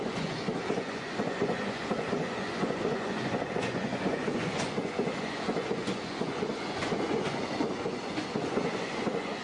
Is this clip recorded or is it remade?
remade